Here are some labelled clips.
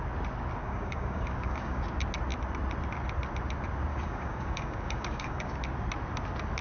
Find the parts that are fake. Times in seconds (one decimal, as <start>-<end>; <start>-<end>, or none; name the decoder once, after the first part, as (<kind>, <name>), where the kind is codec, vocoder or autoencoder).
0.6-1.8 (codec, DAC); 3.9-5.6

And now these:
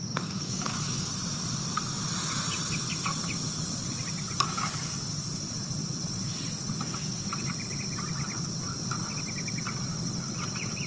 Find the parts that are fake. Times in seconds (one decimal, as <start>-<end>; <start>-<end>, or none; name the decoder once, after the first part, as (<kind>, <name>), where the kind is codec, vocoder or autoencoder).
0.0-1.1 (codec, DAC)

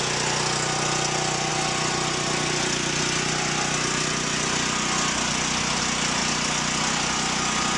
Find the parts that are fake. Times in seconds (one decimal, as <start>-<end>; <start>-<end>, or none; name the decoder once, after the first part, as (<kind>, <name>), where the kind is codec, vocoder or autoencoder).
none

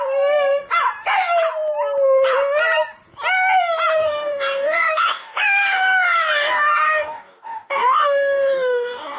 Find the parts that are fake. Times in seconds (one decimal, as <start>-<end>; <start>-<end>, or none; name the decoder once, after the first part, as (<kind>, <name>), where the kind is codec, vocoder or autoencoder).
3.9-9.2 (codec, DAC)

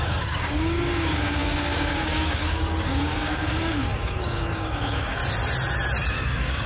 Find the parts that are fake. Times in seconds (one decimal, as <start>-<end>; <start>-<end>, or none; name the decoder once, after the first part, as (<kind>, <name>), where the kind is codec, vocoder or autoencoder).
0.0-5.2 (codec, DAC); 6.1-6.7

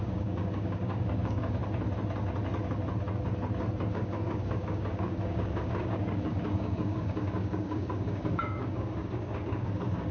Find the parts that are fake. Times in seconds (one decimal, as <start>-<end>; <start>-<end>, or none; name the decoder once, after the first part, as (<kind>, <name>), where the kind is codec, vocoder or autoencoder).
0.0-1.6 (codec, DAC); 3.9-10.1

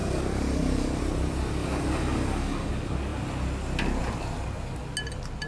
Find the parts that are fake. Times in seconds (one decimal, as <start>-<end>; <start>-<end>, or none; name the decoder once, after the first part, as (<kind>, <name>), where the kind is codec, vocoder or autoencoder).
0.0-1.0 (codec, DAC); 1.6-2.7

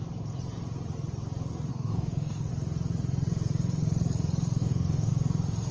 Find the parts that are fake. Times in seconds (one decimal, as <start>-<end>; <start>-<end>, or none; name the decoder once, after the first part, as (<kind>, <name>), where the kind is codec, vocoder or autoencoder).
1.7-2.5 (codec, DAC); 4.6-5.1